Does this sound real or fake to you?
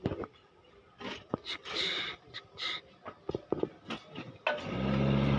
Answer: real